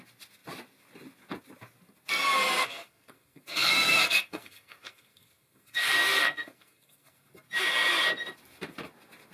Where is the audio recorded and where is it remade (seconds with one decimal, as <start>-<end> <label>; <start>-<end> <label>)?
0.0-2.6 recorded; 2.6-7.3 remade; 7.3-9.3 recorded

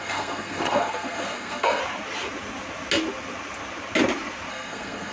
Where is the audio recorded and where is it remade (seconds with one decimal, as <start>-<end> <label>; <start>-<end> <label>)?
0.0-1.8 remade; 1.8-4.5 recorded; 4.5-5.1 remade